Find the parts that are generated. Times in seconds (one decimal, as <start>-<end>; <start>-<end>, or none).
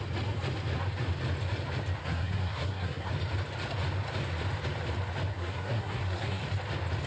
2.0-3.1; 5.3-6.4